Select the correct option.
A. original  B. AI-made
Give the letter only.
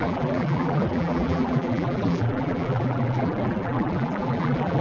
B